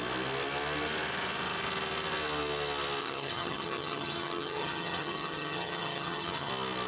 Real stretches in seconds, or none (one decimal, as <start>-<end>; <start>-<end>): 0.0-3.0; 6.5-6.9